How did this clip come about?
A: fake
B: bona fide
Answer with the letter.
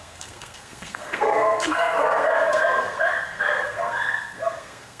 A